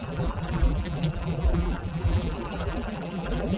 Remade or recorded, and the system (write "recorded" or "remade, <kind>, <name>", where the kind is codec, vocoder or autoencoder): remade, vocoder, BigVGAN v2